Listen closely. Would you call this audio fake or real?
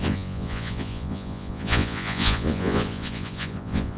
fake